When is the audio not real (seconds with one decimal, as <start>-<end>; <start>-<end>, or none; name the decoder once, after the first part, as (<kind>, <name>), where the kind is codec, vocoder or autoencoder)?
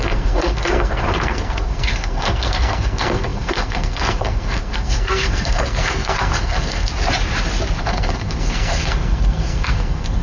0.0-6.9 (codec, SNAC); 7.8-10.2